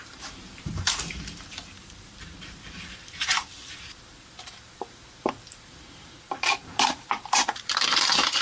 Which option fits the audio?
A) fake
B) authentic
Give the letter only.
A